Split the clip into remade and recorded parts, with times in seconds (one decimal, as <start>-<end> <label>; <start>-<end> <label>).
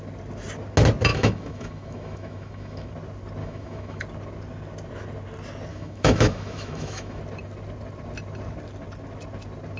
0.0-1.1 recorded; 1.1-2.9 remade; 2.9-3.4 recorded; 3.4-4.0 remade; 4.0-5.7 recorded; 5.7-7.2 remade; 7.2-9.8 recorded